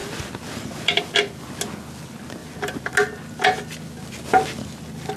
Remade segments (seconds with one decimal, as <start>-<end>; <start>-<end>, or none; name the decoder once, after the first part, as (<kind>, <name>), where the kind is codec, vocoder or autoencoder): 0.0-1.5 (vocoder, BigVGAN v2); 2.4-2.9